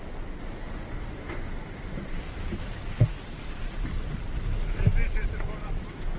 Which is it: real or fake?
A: real